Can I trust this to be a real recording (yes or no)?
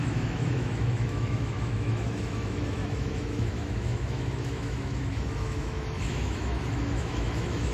no